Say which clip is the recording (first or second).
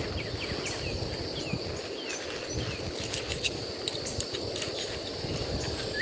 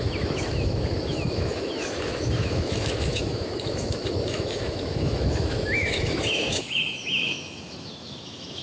first